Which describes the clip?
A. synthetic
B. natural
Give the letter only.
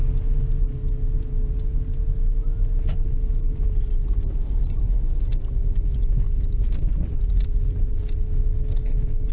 B